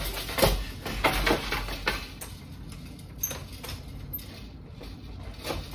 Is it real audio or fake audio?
real